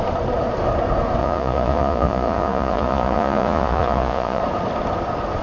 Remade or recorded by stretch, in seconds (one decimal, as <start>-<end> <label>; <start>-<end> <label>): 0.0-1.2 recorded; 1.2-4.4 remade; 4.4-5.4 recorded